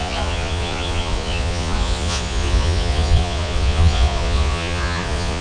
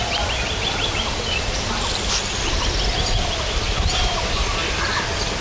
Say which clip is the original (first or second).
second